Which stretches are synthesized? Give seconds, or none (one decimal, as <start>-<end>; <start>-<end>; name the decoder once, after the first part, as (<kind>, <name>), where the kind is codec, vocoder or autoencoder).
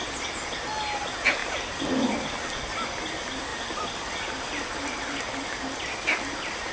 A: 1.4-2.1 (vocoder, BigVGAN v2); 3.5-5.2